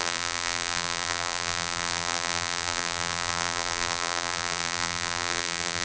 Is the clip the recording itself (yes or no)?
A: no